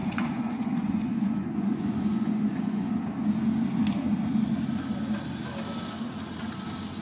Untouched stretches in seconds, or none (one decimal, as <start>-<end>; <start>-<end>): 2.9-7.0